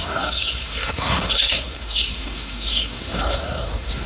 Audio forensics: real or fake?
fake